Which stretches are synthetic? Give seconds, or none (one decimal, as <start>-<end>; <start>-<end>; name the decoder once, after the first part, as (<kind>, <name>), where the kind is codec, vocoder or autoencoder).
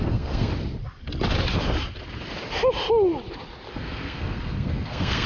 0.0-0.5 (codec, SNAC); 3.7-5.3